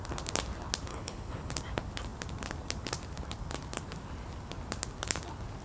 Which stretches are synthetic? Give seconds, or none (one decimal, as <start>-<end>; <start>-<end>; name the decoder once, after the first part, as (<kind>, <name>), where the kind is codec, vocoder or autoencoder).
0.9-1.5 (codec, HILCodec)